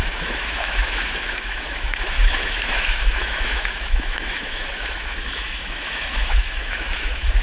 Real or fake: fake